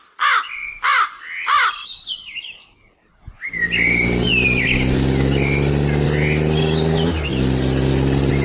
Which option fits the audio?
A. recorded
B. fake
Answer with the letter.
A